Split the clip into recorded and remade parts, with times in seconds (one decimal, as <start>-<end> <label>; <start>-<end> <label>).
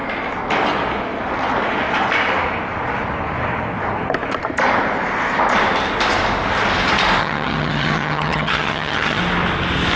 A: 0.0-7.2 recorded; 7.2-9.2 remade; 9.2-10.0 recorded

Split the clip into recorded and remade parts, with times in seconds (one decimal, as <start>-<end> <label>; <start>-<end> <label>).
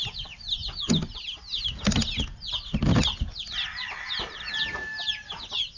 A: 0.0-5.8 recorded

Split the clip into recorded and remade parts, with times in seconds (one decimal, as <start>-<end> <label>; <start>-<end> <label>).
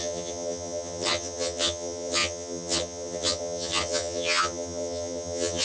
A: 0.0-5.6 remade